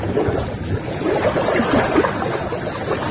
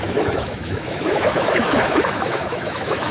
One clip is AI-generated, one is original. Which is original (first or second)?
first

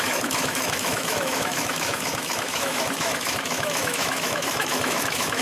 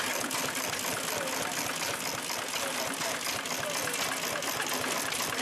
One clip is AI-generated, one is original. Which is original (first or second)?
second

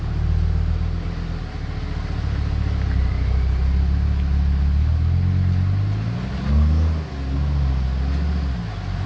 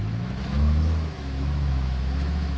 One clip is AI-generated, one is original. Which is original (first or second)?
first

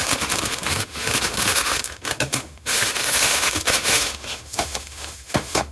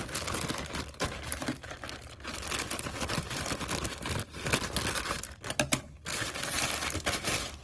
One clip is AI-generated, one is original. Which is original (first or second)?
second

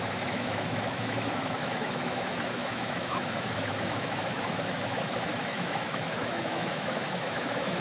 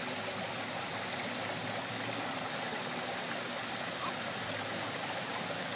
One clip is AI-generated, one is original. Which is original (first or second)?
second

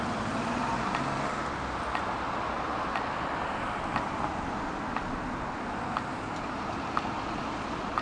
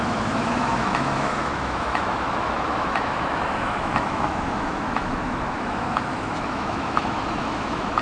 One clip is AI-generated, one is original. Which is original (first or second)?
first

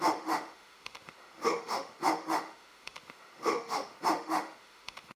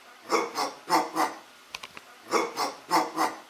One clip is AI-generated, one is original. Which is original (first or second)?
second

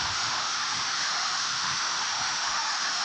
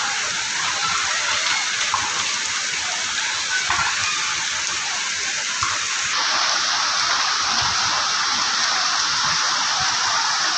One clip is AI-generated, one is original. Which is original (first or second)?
second